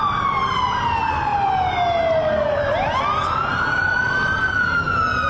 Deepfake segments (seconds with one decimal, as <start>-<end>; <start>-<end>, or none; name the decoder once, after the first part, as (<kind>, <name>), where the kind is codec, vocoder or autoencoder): 0.0-0.6 (vocoder, BigVGAN v2)